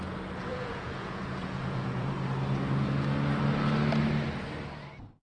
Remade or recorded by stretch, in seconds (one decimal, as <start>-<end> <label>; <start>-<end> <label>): 0.0-0.5 recorded; 0.5-2.1 remade; 2.1-5.3 recorded